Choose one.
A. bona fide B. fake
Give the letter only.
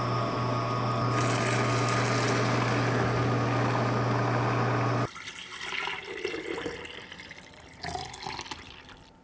A